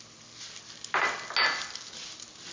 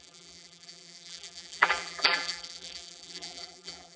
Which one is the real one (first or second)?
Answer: first